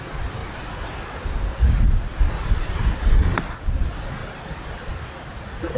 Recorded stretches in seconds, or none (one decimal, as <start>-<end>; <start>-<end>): 0.0-5.8

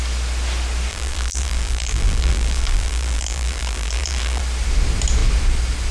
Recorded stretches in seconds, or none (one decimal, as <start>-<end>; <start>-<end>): 0.0-0.9; 4.4-5.9

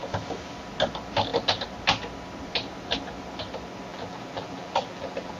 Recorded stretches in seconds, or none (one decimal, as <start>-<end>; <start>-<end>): 0.0-3.9

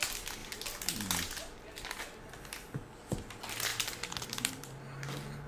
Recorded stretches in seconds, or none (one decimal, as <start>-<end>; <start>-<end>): 0.0-5.5

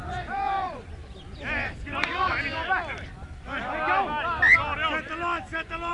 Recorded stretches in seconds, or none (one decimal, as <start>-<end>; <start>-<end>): 1.0-1.8; 2.3-5.9

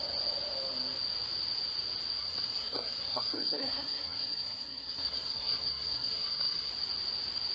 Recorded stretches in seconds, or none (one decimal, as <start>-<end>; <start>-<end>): 0.0-2.2; 6.7-7.5

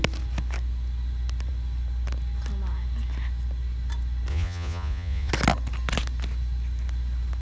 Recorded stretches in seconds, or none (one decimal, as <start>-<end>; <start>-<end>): 0.0-4.3; 5.3-7.4

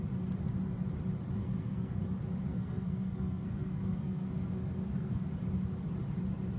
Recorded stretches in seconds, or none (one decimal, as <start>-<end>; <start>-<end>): 0.0-1.4; 2.0-2.5; 5.3-6.6